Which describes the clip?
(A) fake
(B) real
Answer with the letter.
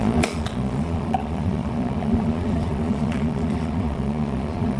A